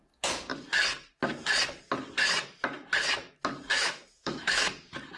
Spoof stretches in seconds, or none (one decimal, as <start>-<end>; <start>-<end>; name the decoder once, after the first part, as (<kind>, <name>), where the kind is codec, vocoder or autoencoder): 3.7-4.7 (autoencoder, DAC-VAE)